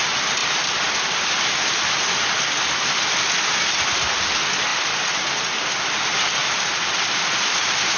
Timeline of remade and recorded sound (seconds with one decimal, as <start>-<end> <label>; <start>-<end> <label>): 0.0-0.4 recorded; 0.4-1.5 remade; 1.5-4.7 recorded; 4.7-5.5 remade; 5.5-6.4 recorded; 6.4-7.6 remade; 7.6-8.0 recorded